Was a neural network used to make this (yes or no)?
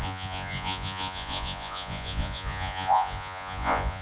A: yes